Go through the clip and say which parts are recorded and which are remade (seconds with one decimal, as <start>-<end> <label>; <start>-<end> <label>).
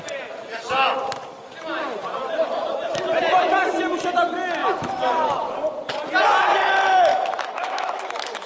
0.0-7.1 recorded; 7.1-8.5 remade